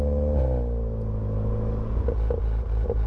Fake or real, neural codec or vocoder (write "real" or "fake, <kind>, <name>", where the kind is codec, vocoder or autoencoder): real